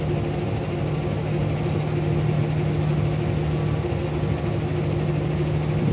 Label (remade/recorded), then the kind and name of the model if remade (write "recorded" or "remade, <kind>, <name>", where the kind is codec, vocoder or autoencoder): recorded